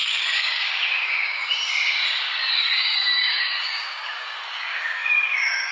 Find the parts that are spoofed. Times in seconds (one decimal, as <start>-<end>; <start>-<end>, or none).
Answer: 0.0-1.4; 2.6-5.7